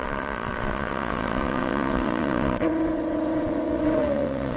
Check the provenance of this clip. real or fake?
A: fake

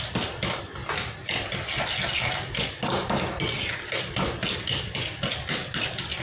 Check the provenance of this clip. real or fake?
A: real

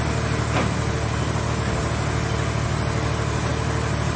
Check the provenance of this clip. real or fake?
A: real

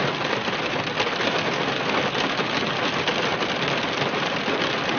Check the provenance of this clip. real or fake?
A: real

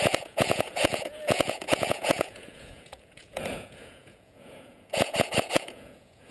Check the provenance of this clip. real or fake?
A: fake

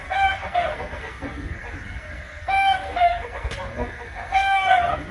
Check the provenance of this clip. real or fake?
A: fake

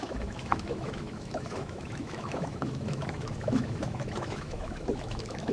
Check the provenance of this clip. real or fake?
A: fake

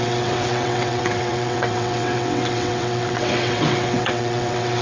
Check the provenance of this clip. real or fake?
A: fake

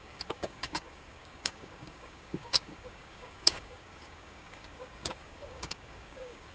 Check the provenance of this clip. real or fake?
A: fake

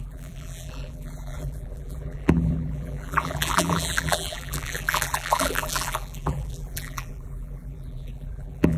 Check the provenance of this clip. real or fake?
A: fake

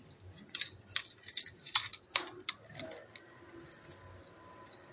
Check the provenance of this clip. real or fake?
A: real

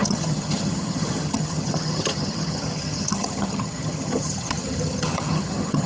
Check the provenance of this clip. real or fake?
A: fake